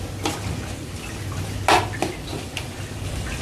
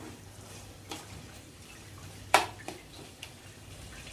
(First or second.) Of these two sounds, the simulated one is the second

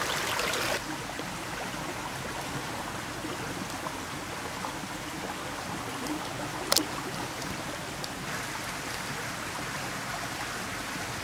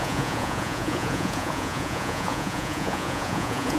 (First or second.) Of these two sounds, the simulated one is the second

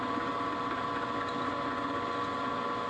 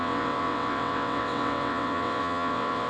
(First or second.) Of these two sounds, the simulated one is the second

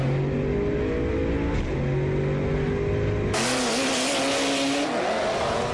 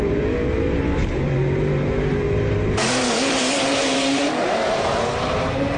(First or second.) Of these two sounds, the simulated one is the second